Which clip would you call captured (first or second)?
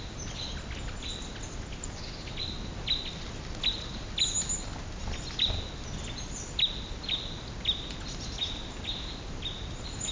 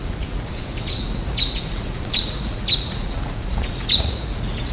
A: first